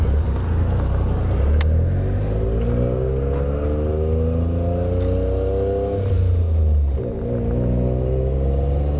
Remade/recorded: recorded